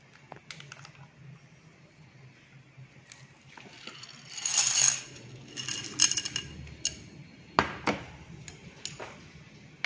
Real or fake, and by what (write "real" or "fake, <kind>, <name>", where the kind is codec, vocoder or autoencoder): real